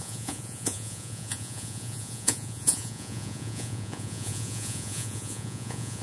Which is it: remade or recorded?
remade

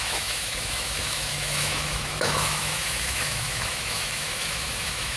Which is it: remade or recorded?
remade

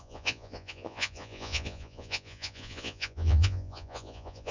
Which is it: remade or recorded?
remade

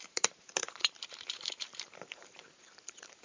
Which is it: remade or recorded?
remade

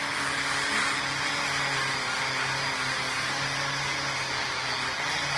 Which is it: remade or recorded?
recorded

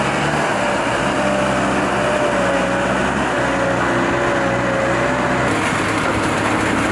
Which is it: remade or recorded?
recorded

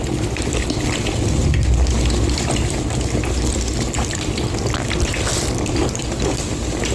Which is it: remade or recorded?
recorded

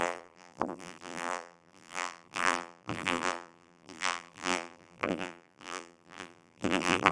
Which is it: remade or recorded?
remade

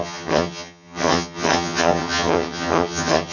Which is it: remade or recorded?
remade